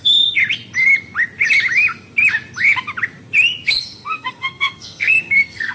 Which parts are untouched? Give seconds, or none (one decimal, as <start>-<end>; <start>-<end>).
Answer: 0.4-3.8